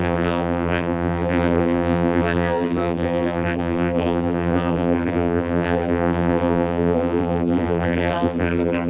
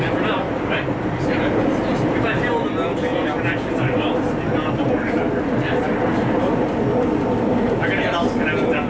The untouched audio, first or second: second